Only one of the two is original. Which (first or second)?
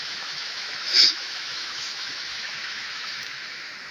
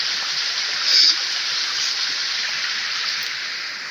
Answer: second